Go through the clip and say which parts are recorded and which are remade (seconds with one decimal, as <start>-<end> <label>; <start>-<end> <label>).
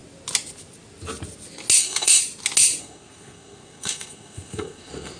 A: 0.0-1.8 recorded; 1.8-2.2 remade; 2.2-2.8 recorded; 2.8-5.2 remade